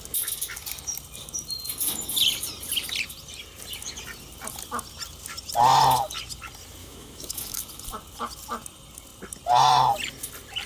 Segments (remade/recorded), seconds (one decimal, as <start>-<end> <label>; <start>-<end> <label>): 0.0-6.8 recorded; 6.8-7.6 remade; 7.6-10.7 recorded